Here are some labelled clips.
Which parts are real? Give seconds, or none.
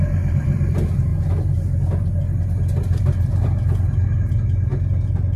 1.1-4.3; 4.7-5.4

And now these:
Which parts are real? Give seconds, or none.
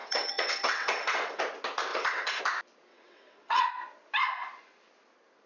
1.4-1.9; 2.4-2.9; 3.7-5.5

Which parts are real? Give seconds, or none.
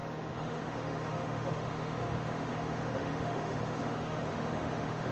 none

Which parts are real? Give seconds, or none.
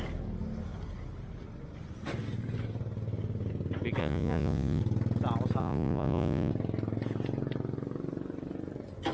0.0-4.0; 4.8-5.6; 6.5-9.1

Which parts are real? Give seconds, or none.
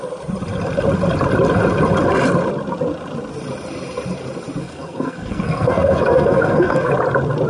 0.0-4.6; 6.9-7.5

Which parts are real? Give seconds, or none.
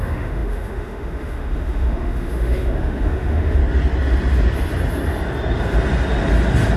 3.6-6.8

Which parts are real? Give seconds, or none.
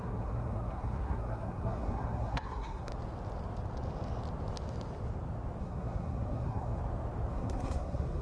2.9-5.6; 6.8-7.3